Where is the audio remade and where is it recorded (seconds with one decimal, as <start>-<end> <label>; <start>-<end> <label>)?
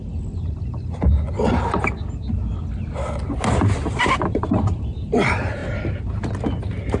0.0-4.2 recorded; 4.2-5.6 remade; 5.6-7.0 recorded